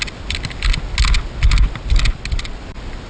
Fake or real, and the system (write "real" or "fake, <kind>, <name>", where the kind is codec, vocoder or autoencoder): real